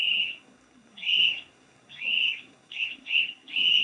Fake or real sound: fake